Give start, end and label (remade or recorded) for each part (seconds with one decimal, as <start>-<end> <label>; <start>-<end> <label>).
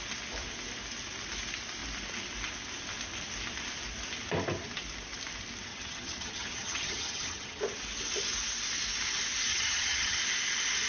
0.0-5.7 recorded; 5.7-7.6 remade; 7.6-9.5 recorded; 9.5-10.2 remade; 10.2-10.9 recorded